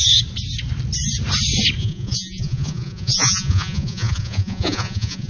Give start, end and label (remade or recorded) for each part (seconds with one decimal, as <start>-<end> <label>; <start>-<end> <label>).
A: 0.0-1.8 recorded; 1.8-5.3 remade